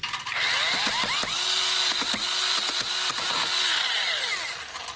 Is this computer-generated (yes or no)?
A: no